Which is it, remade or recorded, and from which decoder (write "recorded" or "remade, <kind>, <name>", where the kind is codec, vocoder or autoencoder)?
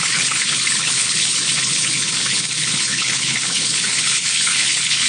remade, codec, HILCodec